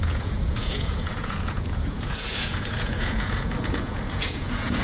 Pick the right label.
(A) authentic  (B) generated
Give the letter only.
B